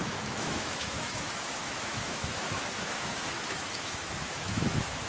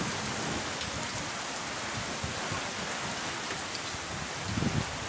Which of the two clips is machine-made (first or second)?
first